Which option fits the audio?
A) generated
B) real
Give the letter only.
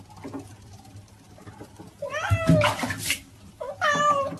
B